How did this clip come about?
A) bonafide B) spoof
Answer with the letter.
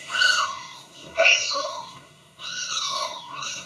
B